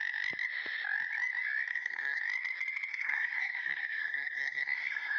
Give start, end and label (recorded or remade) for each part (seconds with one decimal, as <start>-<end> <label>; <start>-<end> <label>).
0.0-1.7 recorded; 1.7-2.2 remade; 2.2-2.9 recorded; 2.9-5.2 remade